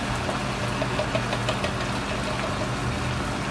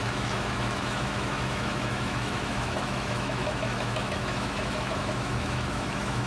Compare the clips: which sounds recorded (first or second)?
first